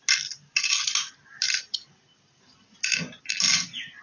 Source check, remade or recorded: recorded